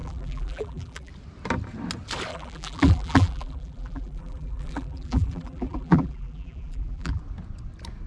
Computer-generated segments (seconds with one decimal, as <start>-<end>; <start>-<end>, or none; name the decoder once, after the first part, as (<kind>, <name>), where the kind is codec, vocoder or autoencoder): 0.0-1.1 (vocoder, BigVGAN v2); 2.3-7.2